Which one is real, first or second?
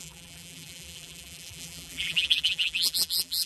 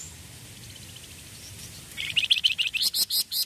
second